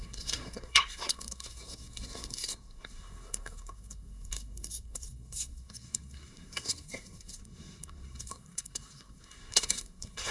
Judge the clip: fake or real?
fake